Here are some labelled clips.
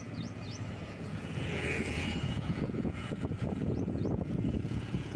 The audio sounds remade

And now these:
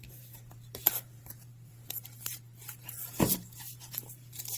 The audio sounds remade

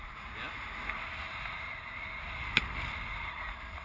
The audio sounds recorded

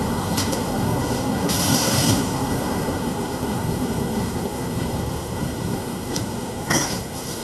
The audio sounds remade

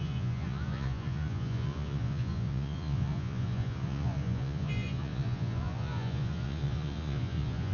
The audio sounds remade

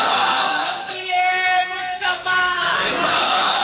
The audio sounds remade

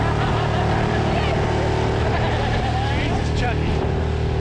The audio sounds recorded